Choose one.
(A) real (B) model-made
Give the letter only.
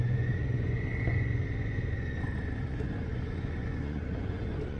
B